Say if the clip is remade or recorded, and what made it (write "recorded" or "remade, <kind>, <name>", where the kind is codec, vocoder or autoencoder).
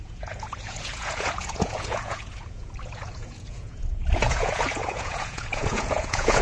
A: remade, vocoder, Vocos